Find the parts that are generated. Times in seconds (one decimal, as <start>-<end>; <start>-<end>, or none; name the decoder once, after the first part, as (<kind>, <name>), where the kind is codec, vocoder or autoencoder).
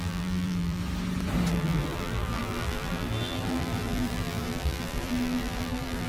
0.0-0.8 (vocoder, BigVGAN v2); 1.5-6.1